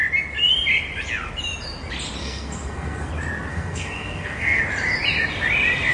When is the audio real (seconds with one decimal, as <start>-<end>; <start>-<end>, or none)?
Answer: 0.0-2.2; 3.1-3.5; 4.6-5.9